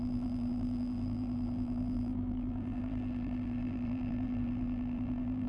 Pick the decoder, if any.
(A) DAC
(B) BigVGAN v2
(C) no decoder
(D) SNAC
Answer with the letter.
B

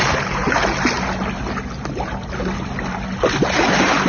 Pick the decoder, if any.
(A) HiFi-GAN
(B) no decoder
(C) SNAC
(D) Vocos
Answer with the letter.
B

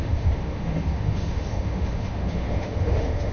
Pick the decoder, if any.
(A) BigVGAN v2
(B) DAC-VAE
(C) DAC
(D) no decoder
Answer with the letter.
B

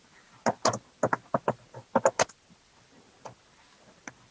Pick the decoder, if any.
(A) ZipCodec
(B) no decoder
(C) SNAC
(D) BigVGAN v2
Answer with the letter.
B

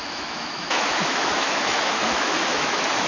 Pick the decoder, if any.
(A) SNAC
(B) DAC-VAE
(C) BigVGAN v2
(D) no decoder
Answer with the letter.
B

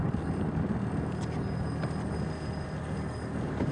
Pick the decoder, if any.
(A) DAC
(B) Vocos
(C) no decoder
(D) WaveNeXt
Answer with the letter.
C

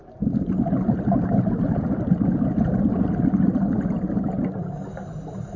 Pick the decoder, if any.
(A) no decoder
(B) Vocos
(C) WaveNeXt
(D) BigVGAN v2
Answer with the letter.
A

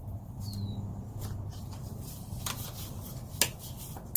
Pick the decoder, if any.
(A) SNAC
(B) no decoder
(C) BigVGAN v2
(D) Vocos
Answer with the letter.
B